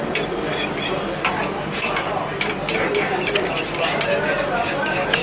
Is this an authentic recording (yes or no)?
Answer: yes